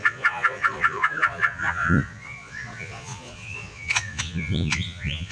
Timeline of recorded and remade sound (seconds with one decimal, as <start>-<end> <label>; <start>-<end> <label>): 0.0-5.3 remade